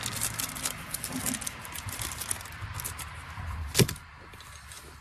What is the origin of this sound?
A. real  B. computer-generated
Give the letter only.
A